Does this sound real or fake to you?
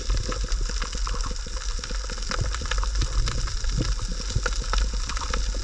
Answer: real